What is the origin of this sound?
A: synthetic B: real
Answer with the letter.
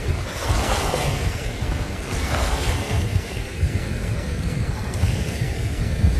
A